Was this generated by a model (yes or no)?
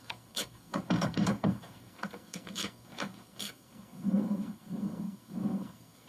yes